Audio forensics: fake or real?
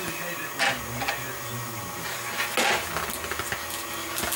real